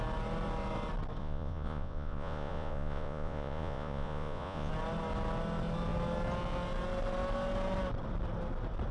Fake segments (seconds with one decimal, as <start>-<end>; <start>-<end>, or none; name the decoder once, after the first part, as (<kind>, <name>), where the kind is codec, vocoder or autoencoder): 1.2-4.7 (vocoder, Vocos)